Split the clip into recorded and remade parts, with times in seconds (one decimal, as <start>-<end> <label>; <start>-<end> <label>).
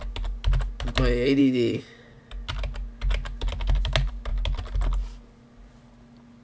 0.0-1.4 recorded; 1.4-2.2 remade; 2.2-6.4 recorded